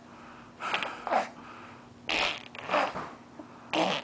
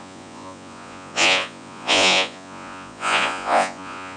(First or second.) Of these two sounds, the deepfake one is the second